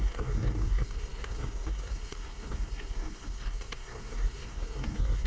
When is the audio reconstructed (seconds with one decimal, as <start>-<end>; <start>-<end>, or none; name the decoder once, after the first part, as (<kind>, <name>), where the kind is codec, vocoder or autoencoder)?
0.0-5.3 (codec, SNAC)